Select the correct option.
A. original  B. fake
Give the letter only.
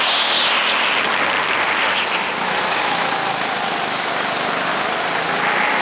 A